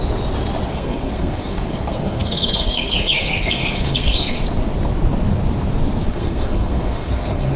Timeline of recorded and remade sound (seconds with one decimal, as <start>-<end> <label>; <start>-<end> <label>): 0.0-0.7 recorded; 0.7-4.4 remade; 4.4-6.1 recorded; 6.1-7.6 remade